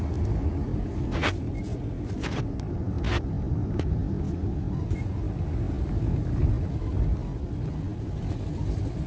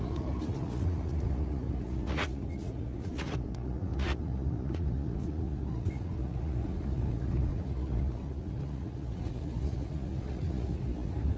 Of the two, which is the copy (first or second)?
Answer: second